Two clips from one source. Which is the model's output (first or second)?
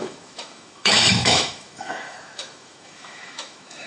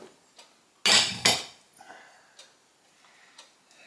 first